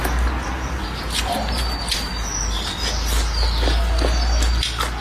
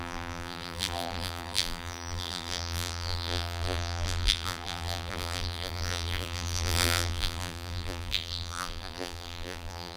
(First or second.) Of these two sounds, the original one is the first